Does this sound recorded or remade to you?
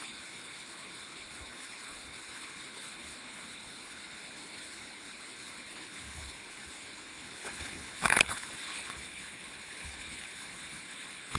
remade